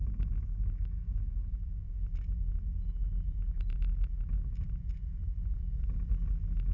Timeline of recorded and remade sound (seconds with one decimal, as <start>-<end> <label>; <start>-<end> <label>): 0.0-2.0 remade; 2.0-6.7 recorded